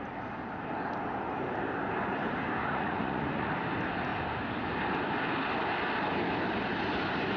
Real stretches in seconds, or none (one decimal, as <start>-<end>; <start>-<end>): 0.0-2.6; 3.5-7.4